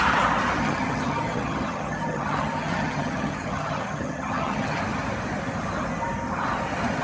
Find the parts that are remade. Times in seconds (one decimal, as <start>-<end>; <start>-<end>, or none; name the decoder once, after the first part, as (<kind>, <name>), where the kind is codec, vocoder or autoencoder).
0.6-4.8 (vocoder, HiFi-GAN)

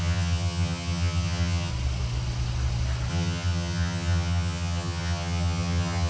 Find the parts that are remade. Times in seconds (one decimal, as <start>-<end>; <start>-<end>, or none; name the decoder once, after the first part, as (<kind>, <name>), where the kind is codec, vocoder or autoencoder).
0.0-1.7 (vocoder, HiFi-GAN); 3.1-6.1

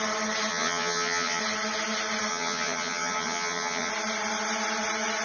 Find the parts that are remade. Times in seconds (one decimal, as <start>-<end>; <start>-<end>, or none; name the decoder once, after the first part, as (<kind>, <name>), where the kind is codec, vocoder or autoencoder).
0.5-1.4 (vocoder, HiFi-GAN); 2.3-3.9

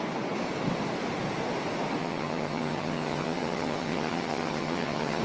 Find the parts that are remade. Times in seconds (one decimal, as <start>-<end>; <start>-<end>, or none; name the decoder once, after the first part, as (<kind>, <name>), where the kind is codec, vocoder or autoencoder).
2.0-5.2 (vocoder, HiFi-GAN)